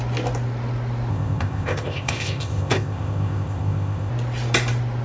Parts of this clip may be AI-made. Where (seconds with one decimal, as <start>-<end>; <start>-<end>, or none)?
1.1-4.1